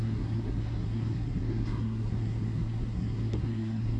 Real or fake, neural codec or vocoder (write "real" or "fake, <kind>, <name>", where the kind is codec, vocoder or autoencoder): fake, codec, SNAC